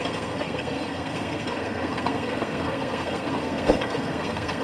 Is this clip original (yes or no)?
no